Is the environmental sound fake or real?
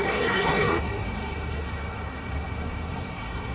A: fake